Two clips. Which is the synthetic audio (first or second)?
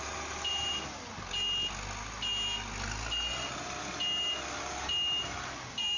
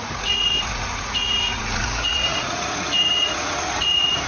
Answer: second